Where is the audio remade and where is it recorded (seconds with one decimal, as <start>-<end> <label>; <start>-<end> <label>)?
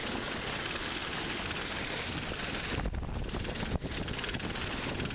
0.0-5.1 recorded